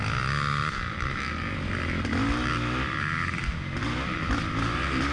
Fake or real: real